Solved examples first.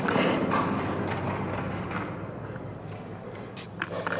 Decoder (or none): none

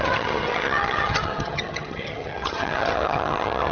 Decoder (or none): vocoder, HiFi-GAN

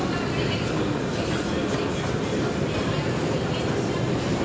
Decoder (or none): none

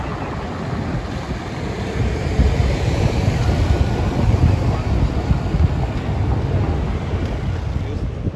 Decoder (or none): none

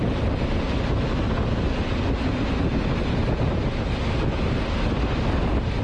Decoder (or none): none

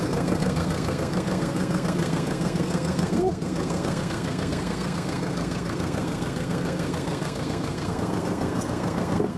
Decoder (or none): codec, SNAC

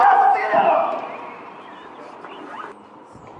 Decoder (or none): none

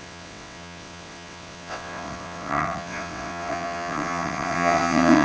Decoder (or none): vocoder, WaveNeXt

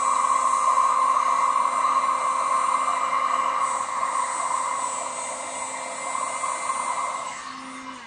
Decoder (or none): none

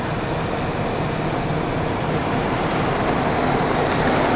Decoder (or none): none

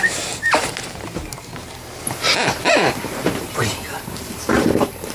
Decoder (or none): vocoder, BigVGAN v2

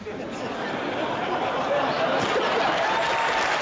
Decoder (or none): none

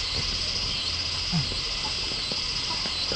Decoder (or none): none